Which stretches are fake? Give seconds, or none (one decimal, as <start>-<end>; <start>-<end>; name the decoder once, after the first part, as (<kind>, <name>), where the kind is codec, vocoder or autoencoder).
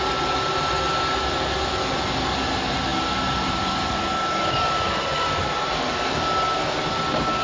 2.9-6.0 (vocoder, BigVGAN v2)